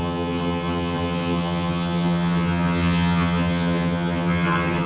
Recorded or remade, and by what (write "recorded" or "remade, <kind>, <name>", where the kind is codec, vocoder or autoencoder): remade, vocoder, HiFi-GAN